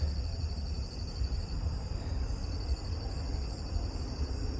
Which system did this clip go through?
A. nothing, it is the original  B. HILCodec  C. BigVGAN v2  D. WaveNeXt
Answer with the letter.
C